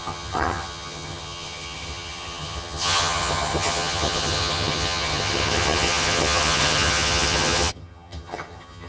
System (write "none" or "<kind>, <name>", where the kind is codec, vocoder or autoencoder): vocoder, HiFi-GAN